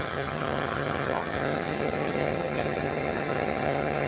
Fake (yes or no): yes